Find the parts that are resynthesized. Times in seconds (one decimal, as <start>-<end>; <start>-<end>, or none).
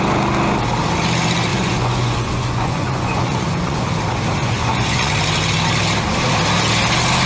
1.5-3.9; 4.4-5.1